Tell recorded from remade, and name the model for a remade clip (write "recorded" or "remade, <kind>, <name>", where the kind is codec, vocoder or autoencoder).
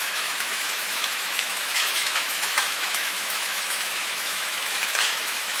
remade, autoencoder, DAC-VAE